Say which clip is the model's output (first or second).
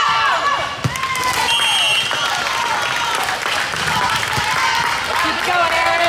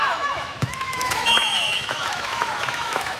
second